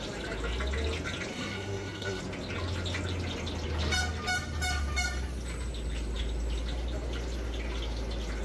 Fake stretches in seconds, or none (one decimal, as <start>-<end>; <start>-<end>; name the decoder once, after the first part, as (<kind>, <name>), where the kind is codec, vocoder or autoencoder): 1.3-2.2 (codec, SNAC)